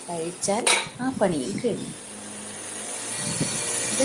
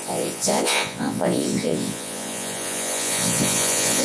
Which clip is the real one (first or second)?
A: first